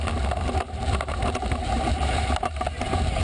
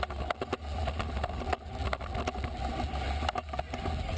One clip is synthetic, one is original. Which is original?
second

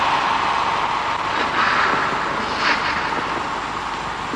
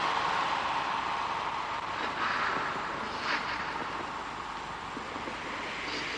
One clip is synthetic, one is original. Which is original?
first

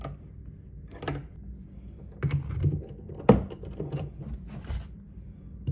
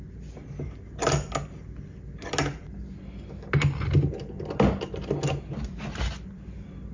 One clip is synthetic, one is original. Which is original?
second